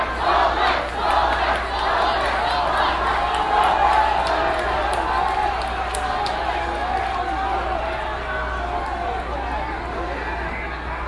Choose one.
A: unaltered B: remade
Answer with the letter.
A